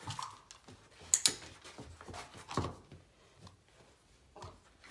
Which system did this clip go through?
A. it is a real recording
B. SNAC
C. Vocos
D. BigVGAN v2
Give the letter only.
A